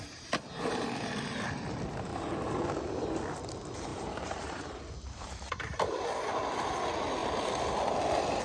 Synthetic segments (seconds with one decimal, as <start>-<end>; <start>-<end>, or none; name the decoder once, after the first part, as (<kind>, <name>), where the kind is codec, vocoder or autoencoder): 2.1-2.6 (vocoder, BigVGAN v2); 3.9-6.0

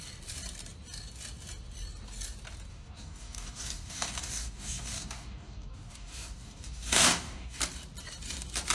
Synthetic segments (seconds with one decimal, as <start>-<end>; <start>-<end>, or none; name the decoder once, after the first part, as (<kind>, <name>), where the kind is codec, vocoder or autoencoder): 2.7-7.6 (codec, DAC)

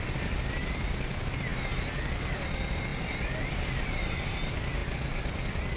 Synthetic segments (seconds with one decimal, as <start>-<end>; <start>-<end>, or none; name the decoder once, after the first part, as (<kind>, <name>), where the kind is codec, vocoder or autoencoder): none